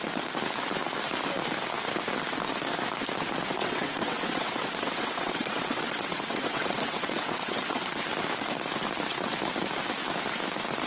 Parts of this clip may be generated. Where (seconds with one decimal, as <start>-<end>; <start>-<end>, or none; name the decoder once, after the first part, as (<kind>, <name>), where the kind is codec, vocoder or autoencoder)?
3.6-8.0 (vocoder, WaveNeXt)